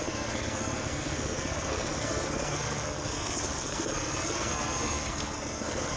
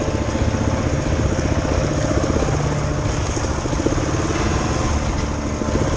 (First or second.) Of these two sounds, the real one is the second